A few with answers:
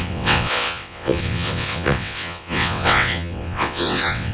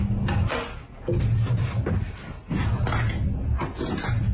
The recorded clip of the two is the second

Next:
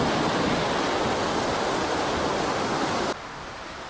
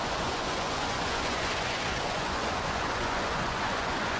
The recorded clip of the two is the first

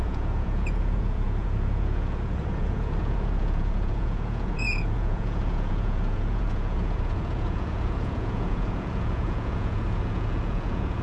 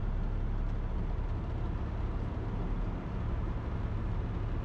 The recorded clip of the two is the second